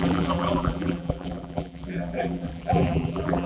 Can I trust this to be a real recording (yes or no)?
no